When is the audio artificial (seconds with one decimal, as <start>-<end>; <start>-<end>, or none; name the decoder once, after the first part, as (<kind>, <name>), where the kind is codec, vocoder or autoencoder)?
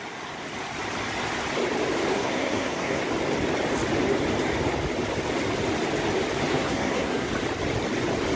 2.1-3.0 (codec, SNAC); 6.5-7.3